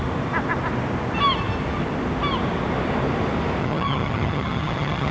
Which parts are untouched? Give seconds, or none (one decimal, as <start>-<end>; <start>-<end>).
0.0-3.6

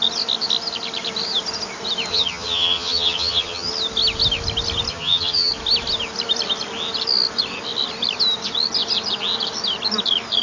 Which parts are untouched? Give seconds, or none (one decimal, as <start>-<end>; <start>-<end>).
0.0-2.1; 3.7-4.9; 5.5-10.4

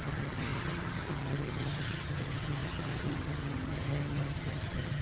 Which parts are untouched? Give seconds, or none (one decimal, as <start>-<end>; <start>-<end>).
none

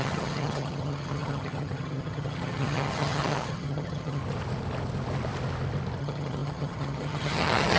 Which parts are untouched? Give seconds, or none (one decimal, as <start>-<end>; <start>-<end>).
4.2-6.0

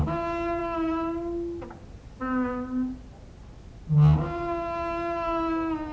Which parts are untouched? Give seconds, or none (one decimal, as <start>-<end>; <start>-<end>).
0.0-5.9